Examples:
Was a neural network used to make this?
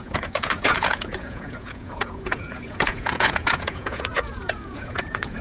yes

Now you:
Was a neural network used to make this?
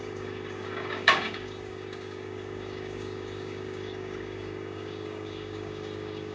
yes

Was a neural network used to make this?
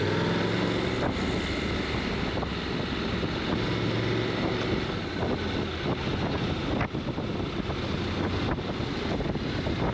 no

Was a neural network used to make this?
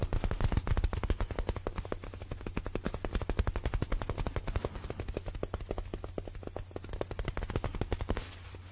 no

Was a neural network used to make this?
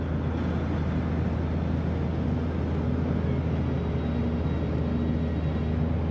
no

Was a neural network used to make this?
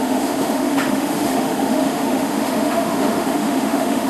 yes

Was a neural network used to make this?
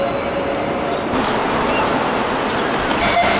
no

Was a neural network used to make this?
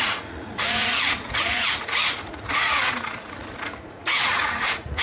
yes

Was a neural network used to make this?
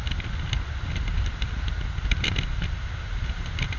no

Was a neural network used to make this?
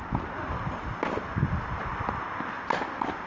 no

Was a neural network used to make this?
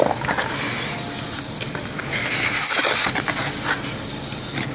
no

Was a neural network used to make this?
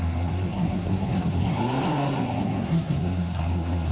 yes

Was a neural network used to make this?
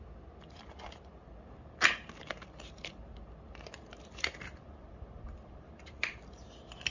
no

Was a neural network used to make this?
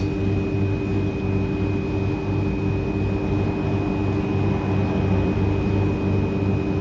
no